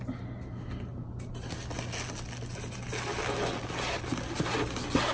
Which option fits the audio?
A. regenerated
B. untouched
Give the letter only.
B